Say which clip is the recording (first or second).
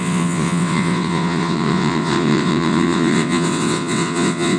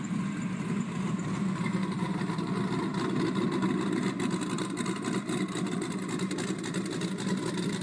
second